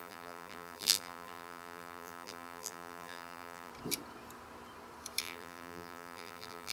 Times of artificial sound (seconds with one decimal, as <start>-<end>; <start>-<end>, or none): 0.0-3.7; 5.2-6.7